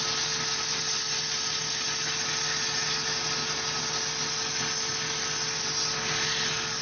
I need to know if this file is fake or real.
real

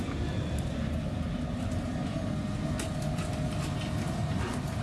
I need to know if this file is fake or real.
real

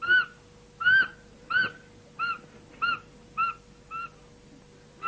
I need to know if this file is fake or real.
real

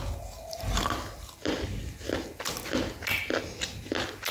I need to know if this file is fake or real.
real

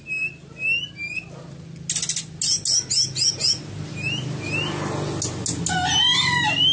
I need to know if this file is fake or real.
real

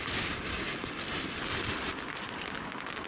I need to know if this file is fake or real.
real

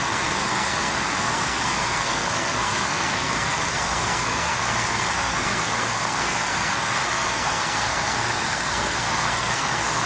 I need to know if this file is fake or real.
fake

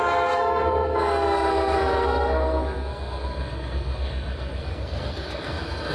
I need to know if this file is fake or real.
fake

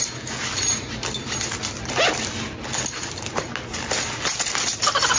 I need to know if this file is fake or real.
real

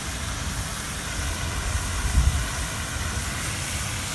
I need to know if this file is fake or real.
real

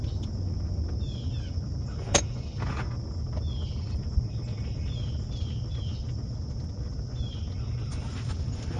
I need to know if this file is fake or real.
real